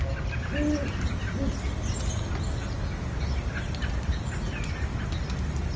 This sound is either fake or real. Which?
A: real